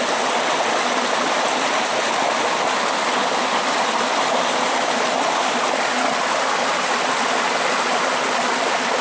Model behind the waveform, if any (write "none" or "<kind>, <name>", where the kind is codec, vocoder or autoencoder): none